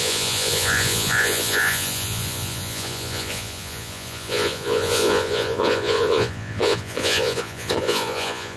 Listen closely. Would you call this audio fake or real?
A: fake